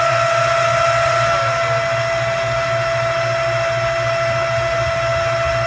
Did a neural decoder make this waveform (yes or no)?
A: no